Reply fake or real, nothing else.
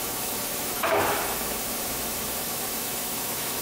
fake